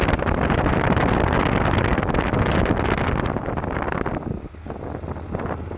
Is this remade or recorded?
recorded